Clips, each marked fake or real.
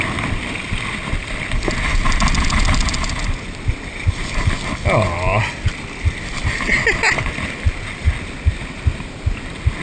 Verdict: real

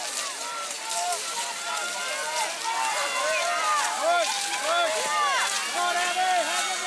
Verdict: real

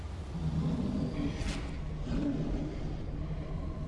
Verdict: real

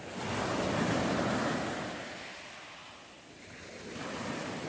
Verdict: real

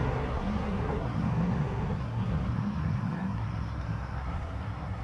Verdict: fake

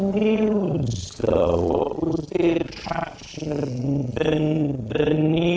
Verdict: fake